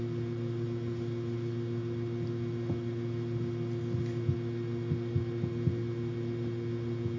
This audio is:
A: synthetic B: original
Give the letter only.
B